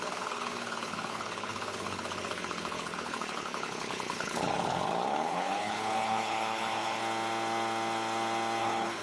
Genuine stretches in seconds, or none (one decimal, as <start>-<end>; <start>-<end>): 7.0-8.6

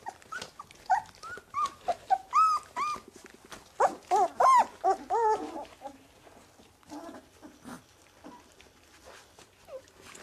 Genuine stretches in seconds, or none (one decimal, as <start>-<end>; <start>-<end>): 0.0-10.2

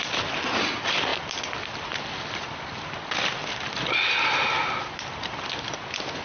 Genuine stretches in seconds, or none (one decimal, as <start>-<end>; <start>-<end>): 0.0-6.2

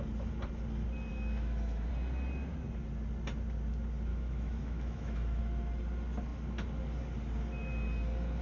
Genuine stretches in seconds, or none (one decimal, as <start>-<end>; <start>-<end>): 0.0-1.1; 1.9-4.1; 5.4-8.4